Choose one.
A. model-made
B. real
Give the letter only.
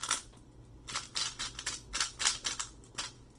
B